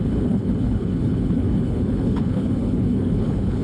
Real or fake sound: fake